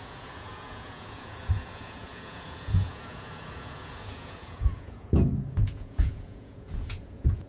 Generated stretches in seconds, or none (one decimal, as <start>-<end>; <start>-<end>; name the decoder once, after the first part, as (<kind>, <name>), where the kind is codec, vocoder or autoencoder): 0.0-7.5 (vocoder, Vocos)